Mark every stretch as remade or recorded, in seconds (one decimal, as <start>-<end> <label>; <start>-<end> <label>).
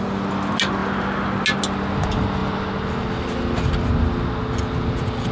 0.0-5.3 recorded